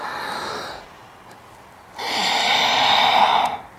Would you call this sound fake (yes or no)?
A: no